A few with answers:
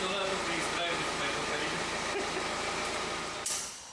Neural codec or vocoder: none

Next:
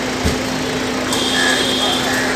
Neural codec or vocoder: none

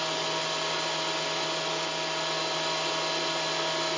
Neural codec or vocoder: none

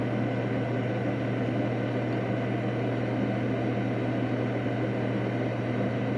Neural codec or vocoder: none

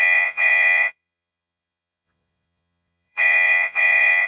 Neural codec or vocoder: vocoder, Vocos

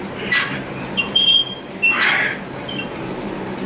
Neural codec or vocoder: vocoder, BigVGAN v2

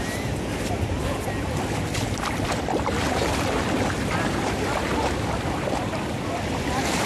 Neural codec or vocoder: vocoder, BigVGAN v2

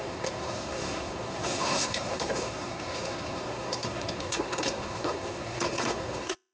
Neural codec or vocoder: codec, SNAC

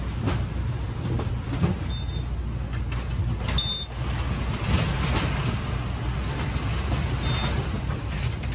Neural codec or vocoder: none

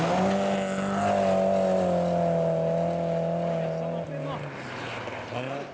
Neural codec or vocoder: none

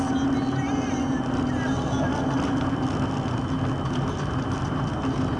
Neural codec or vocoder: none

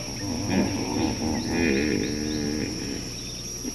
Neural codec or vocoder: none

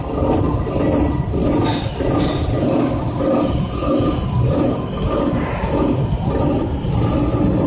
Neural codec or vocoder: none